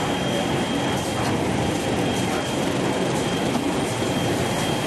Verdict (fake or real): real